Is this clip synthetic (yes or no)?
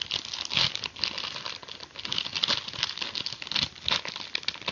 no